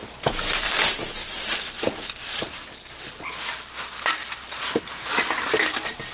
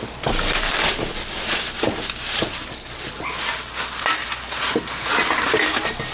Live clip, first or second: second